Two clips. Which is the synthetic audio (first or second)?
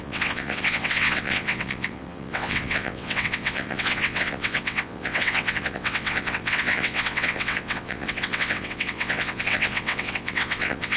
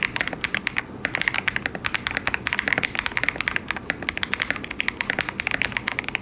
first